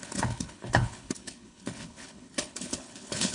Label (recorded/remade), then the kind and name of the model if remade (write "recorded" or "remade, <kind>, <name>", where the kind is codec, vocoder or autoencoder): remade, codec, HILCodec